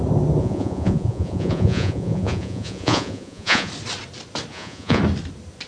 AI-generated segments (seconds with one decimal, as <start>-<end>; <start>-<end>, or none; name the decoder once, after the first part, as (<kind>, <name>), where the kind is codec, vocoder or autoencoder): 0.4-3.7 (vocoder, Vocos); 4.5-5.0